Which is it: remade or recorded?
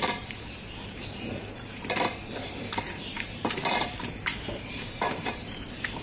remade